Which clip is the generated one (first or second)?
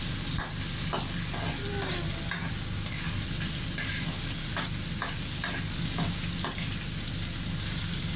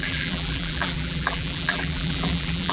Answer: second